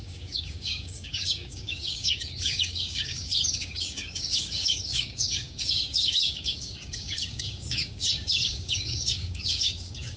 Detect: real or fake fake